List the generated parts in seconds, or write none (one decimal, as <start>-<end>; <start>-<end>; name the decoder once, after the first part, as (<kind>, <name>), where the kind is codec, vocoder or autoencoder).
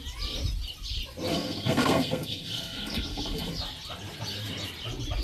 1.3-3.5 (codec, SNAC)